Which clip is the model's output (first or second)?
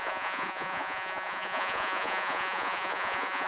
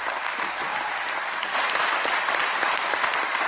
first